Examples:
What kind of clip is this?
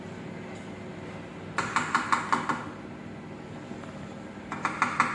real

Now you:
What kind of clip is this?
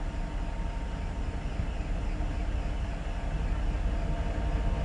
real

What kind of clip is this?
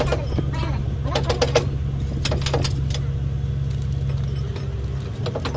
real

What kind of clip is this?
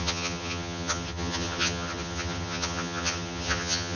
fake